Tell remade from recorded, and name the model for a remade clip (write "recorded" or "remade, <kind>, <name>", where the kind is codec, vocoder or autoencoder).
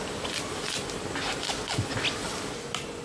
recorded